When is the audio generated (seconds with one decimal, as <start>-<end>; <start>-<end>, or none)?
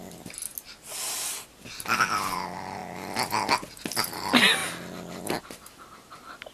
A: none